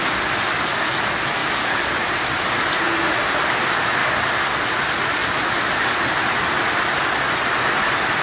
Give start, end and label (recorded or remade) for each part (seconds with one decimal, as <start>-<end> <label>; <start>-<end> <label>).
0.0-1.4 recorded; 1.4-3.5 remade; 3.5-5.2 recorded; 5.2-6.5 remade; 6.5-8.2 recorded